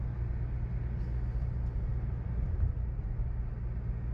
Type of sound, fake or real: real